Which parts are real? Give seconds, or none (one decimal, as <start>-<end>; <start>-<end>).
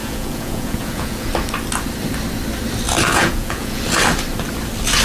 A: 1.3-3.1; 3.8-5.0